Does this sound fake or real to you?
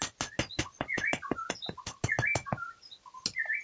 real